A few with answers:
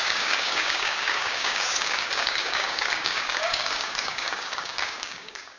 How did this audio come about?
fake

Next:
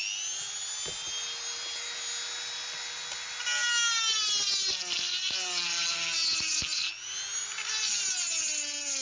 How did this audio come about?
real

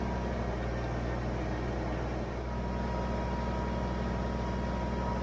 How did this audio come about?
real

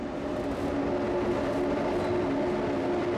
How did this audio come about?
real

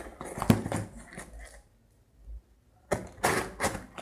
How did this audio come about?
real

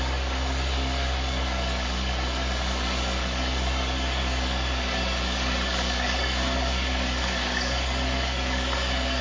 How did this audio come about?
fake